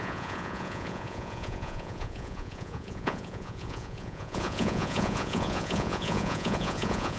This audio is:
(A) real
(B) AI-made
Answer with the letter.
B